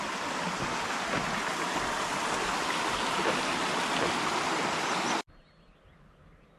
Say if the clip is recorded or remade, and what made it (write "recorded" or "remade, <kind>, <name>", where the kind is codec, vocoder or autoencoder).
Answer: recorded